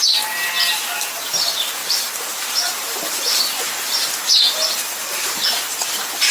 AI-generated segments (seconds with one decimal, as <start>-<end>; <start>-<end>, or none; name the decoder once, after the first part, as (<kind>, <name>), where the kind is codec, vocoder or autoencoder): none